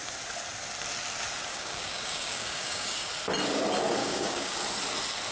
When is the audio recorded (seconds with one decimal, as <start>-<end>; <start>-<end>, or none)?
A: 0.0-1.5; 3.1-4.0; 4.6-5.3